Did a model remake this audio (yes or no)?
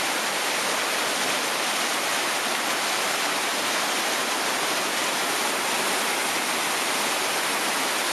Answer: no